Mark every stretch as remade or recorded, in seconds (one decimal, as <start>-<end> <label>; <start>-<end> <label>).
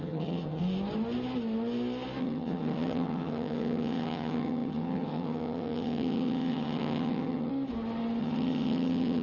0.0-0.6 remade; 0.6-2.2 recorded; 2.2-7.5 remade; 7.5-8.2 recorded; 8.2-9.2 remade